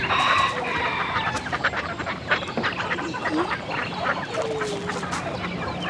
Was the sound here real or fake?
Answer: real